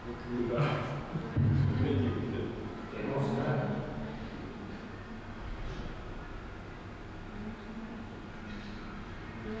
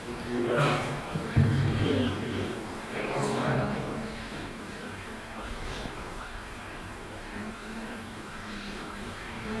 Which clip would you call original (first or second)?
first